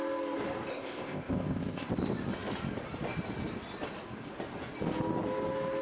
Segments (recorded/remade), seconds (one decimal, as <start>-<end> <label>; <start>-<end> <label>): 0.0-0.7 recorded; 0.7-1.9 remade; 1.9-5.8 recorded